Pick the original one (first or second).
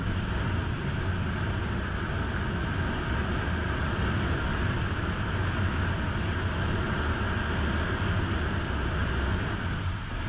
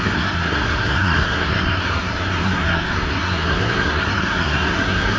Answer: first